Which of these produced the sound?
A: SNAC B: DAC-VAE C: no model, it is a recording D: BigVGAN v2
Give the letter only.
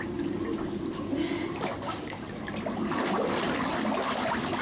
C